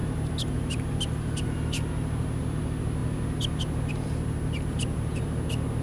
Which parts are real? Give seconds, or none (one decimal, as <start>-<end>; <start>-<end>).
0.0-5.8